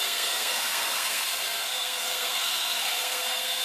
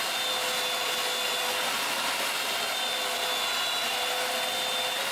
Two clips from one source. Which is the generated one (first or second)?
first